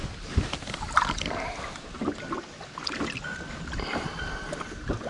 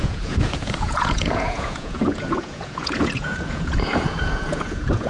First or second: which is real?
first